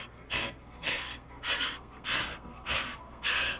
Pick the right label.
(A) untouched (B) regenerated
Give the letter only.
B